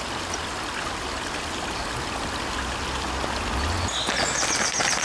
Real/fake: real